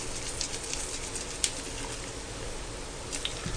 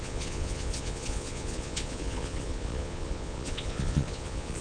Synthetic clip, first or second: second